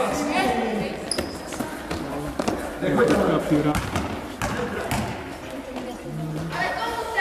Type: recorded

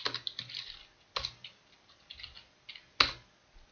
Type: recorded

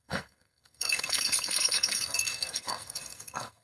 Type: remade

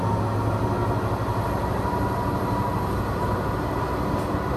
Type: recorded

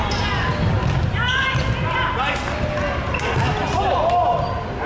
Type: recorded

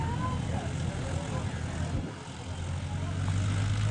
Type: recorded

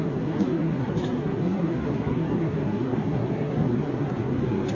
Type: remade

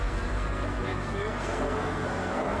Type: remade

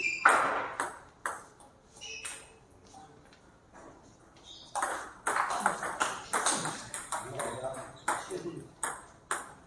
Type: recorded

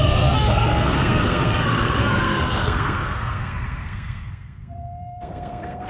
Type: remade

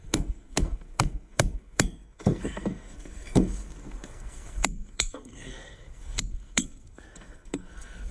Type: remade